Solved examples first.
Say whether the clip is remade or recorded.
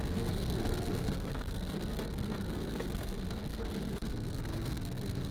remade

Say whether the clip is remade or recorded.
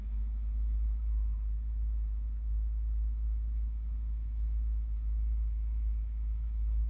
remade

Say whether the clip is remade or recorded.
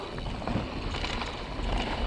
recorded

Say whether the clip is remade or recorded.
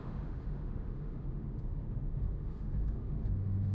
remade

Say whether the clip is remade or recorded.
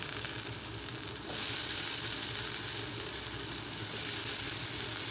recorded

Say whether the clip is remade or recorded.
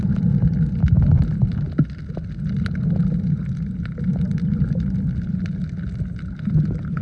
recorded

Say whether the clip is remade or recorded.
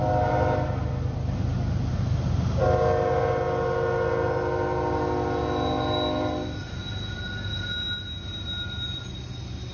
recorded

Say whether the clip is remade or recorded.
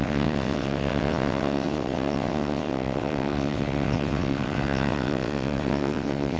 remade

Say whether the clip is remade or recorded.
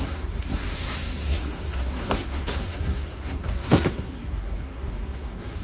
remade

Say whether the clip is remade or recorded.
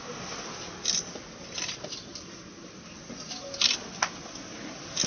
recorded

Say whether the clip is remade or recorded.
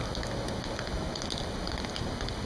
recorded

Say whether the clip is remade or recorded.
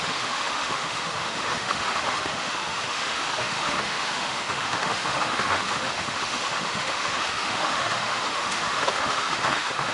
remade